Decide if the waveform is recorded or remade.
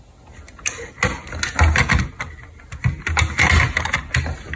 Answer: recorded